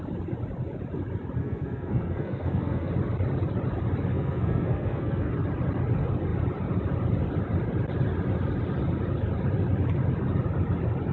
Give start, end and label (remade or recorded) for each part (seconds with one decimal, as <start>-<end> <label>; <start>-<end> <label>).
0.0-1.4 recorded; 1.4-2.9 remade; 2.9-4.1 recorded; 4.1-5.3 remade; 5.3-11.1 recorded